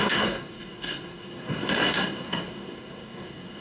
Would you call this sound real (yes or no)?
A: no